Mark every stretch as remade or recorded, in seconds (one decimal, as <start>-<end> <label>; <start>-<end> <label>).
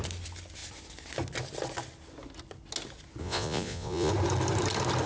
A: 0.0-3.2 recorded; 3.2-4.1 remade; 4.1-5.1 recorded